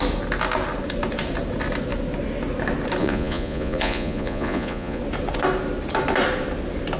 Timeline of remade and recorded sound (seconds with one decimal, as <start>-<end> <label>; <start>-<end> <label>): 0.0-3.0 recorded; 3.0-5.0 remade; 5.0-7.0 recorded